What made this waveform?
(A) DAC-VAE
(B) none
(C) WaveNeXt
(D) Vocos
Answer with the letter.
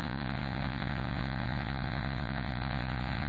C